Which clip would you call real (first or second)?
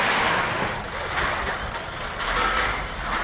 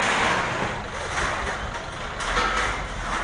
second